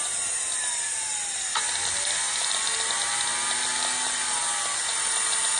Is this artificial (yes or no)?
no